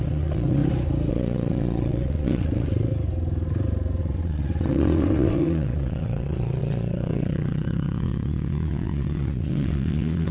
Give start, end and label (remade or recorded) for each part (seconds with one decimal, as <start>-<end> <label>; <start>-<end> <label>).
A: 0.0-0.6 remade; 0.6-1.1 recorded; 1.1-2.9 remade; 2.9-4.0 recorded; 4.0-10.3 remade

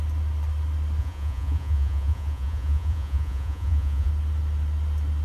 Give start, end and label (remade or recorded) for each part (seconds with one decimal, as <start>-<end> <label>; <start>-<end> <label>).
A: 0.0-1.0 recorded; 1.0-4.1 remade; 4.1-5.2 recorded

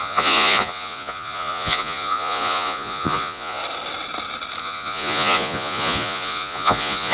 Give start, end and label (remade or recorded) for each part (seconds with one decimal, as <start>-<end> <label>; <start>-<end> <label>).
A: 0.0-3.6 remade; 3.6-4.6 recorded; 4.6-7.1 remade

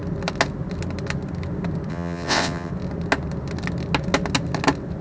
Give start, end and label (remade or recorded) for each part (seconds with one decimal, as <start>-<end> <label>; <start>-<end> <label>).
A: 0.0-1.9 recorded; 1.9-2.7 remade; 2.7-5.0 recorded